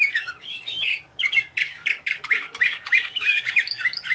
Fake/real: fake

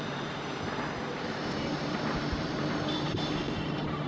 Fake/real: fake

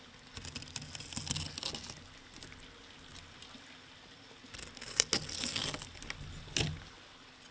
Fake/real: real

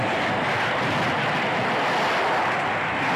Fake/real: real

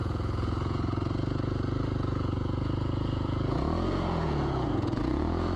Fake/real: fake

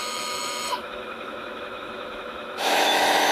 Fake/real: fake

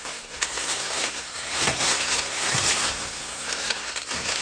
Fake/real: fake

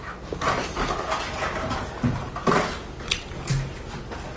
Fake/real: real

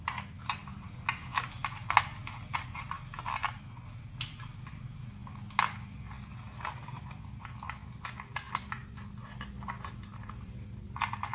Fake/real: real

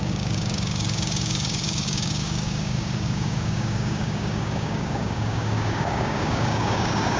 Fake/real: fake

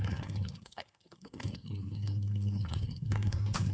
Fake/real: fake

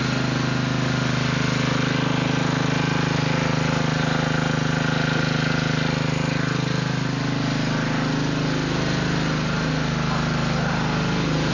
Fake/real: real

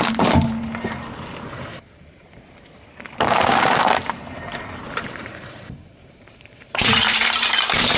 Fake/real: fake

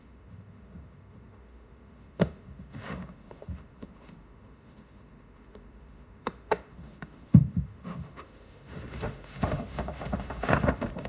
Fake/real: fake